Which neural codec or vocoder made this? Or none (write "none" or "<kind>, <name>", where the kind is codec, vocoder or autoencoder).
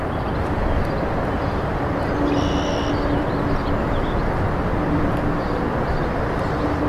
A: none